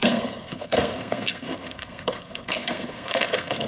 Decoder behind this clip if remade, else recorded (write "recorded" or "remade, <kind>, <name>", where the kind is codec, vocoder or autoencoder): remade, codec, SNAC